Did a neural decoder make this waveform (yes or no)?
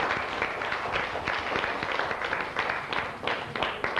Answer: no